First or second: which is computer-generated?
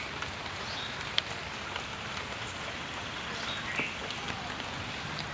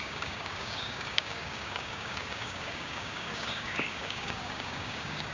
second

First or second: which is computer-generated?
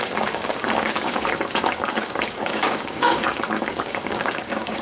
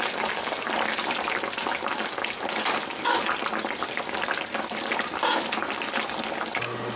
first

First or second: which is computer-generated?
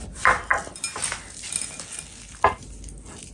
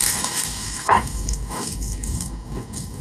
second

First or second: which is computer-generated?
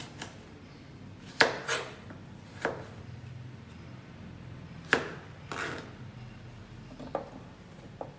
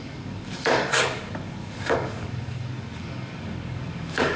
second